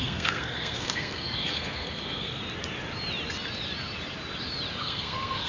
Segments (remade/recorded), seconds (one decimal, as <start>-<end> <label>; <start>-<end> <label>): 0.0-2.4 remade; 2.4-4.8 recorded; 4.8-5.5 remade